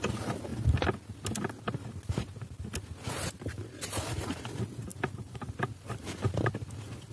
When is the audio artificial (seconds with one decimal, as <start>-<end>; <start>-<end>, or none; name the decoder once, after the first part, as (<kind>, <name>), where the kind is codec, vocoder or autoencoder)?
4.9-5.5 (vocoder, BigVGAN v2)